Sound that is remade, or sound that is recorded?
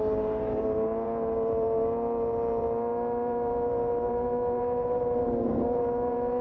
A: remade